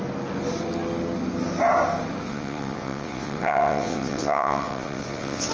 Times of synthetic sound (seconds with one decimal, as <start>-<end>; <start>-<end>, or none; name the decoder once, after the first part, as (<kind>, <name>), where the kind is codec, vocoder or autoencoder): 2.3-5.5 (vocoder, WaveNeXt)